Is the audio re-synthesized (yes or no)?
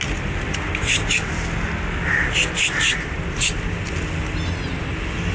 no